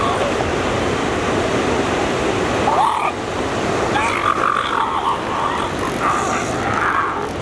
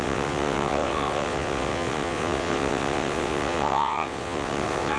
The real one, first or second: first